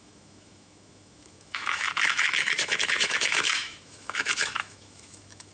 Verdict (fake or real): fake